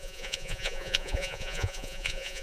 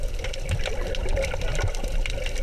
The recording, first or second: second